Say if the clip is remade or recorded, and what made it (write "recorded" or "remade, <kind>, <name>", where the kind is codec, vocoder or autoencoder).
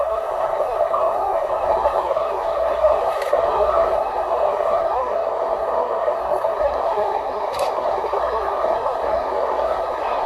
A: remade, codec, SNAC